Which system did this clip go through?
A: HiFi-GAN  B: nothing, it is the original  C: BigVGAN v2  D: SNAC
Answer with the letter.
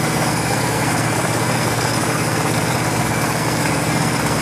D